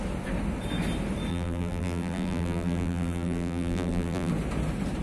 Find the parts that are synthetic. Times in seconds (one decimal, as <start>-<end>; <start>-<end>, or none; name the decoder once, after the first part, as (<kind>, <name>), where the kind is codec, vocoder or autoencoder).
1.3-4.3 (vocoder, BigVGAN v2)